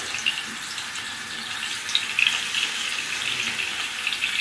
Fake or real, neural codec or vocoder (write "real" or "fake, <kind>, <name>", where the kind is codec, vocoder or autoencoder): real